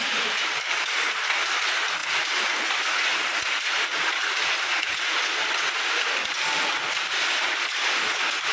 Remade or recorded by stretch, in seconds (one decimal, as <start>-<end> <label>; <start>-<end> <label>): 0.0-8.5 recorded